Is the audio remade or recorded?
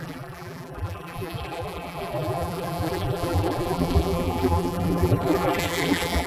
remade